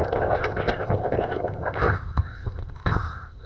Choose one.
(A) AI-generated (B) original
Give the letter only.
A